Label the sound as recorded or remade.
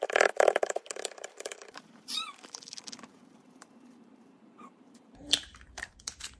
remade